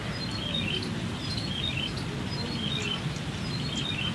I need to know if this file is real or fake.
real